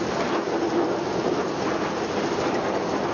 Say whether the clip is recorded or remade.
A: recorded